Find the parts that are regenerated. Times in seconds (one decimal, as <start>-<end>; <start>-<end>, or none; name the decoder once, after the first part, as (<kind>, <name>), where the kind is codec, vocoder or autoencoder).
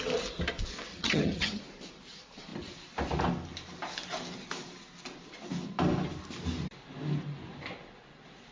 0.9-1.6 (vocoder, HiFi-GAN)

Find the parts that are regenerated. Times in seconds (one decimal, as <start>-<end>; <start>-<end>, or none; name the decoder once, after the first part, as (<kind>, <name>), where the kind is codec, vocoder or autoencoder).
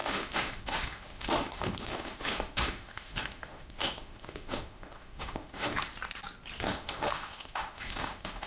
0.0-5.8 (autoencoder, DAC-VAE); 6.6-8.5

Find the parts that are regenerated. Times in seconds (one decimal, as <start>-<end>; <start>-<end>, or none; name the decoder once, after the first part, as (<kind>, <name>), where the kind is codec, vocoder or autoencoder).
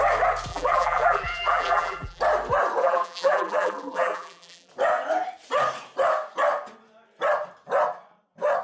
0.5-2.2 (vocoder, BigVGAN v2); 2.8-4.7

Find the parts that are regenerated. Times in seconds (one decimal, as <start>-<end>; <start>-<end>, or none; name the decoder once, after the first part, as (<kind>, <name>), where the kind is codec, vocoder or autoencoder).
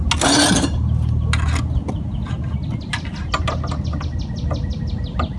none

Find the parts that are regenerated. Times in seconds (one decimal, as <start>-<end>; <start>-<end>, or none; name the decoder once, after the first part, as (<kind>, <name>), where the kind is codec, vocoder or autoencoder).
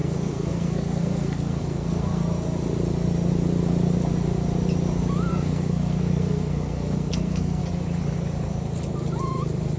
0.0-2.2 (codec, SNAC); 5.3-7.6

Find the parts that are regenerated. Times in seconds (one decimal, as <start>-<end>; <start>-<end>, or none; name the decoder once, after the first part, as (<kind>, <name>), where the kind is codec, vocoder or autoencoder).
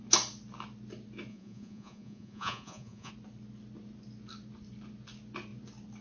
1.3-3.1 (vocoder, Vocos)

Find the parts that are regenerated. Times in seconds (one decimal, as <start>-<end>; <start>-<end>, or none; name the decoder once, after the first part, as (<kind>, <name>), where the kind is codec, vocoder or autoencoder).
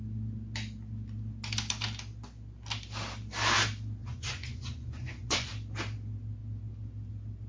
4.0-5.5 (vocoder, Vocos)